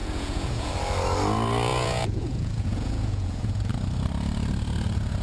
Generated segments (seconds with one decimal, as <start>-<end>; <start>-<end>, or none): 0.0-0.7; 1.7-3.7